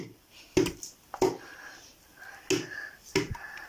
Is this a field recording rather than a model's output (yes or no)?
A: yes